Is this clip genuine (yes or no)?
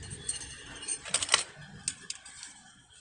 yes